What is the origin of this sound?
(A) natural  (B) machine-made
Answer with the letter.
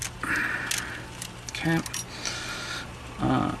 A